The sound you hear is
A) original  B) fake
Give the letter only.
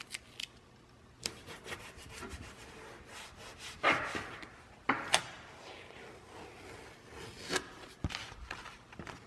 A